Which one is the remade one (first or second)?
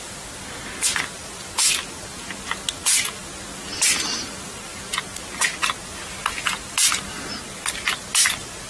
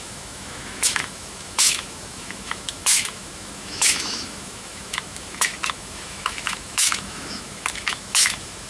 second